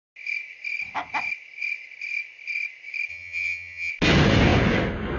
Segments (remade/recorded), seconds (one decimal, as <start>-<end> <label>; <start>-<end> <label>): 0.0-3.1 recorded; 3.1-3.9 remade; 3.9-5.2 recorded